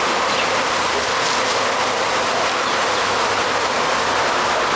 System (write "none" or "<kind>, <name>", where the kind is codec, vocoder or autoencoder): none